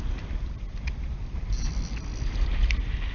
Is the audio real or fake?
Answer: real